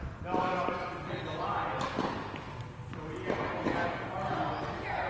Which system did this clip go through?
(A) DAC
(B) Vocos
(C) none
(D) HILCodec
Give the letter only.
C